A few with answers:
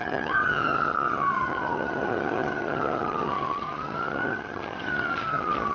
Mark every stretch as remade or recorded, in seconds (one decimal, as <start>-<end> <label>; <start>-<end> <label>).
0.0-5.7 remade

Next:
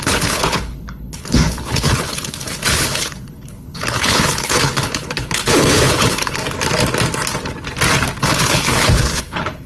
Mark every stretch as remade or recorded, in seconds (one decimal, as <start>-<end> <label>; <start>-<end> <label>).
0.0-6.4 remade; 6.4-8.2 recorded; 8.2-9.7 remade

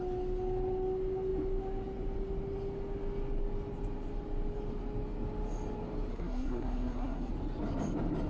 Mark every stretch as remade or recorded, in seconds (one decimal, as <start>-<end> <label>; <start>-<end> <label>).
0.0-6.1 recorded; 6.1-7.3 remade; 7.3-8.3 recorded